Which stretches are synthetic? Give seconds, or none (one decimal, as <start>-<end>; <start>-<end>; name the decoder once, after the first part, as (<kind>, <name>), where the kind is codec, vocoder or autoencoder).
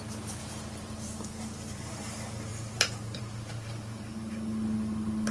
0.4-1.9 (vocoder, BigVGAN v2); 2.5-3.2